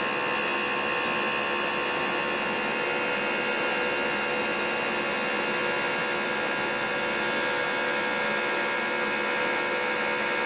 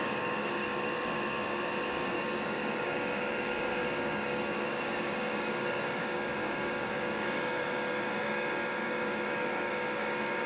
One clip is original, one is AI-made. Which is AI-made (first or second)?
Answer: second